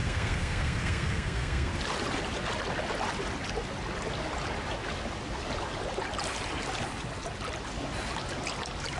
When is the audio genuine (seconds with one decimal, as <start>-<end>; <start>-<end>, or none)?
1.7-9.0